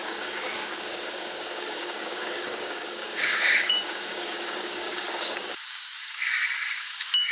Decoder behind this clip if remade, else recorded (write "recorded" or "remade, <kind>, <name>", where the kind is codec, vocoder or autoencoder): remade, codec, DAC